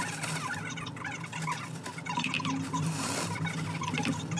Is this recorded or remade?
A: remade